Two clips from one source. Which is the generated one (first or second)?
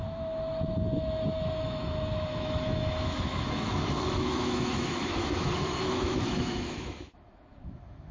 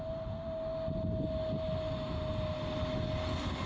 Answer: first